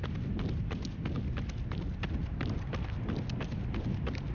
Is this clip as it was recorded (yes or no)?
yes